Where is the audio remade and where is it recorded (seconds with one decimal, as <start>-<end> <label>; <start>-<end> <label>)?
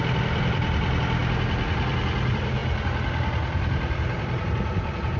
0.0-1.2 remade; 1.2-1.7 recorded; 1.7-5.2 remade